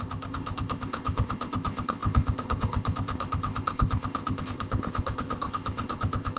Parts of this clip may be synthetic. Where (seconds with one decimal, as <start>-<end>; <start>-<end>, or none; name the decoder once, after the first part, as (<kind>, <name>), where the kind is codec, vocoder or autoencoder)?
0.0-6.4 (codec, ZipCodec)

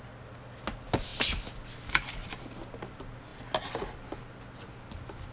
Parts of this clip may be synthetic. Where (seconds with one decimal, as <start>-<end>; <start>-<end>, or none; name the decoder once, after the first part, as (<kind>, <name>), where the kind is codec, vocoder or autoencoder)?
none

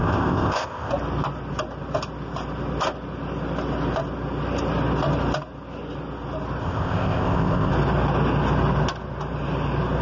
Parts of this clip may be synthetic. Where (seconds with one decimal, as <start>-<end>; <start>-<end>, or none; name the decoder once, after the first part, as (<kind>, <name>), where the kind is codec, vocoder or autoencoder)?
0.0-0.9 (codec, ZipCodec); 6.6-7.7

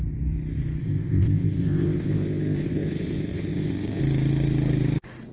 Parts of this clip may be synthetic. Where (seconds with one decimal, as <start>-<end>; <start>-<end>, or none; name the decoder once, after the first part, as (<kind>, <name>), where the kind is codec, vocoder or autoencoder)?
0.8-4.0 (codec, ZipCodec)